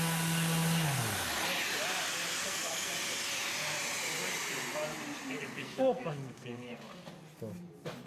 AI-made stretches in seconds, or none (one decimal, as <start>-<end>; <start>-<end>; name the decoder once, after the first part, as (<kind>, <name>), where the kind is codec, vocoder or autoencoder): 2.4-2.9 (codec, SNAC); 5.3-6.8